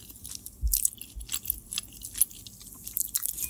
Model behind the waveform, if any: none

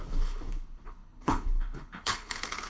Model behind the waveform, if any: codec, HILCodec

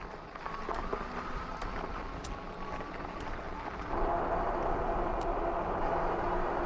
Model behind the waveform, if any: none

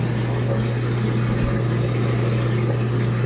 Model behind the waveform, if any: none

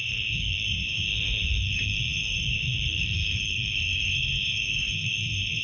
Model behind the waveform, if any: codec, SNAC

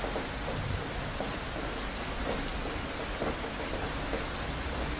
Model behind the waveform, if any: none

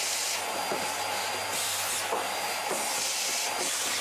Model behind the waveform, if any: none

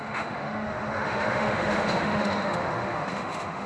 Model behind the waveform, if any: autoencoder, DAC-VAE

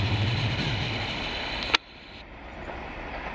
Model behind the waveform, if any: vocoder, BigVGAN v2